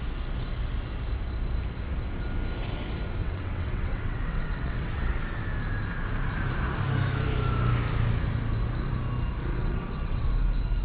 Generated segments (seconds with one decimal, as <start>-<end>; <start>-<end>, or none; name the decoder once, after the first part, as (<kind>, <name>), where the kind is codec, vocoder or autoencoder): 3.2-5.2 (vocoder, WaveNeXt); 9.5-10.3